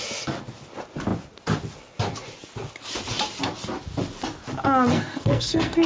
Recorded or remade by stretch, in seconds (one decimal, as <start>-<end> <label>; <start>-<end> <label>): 0.0-4.9 recorded; 4.9-5.9 remade